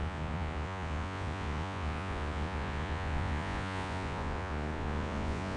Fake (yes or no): yes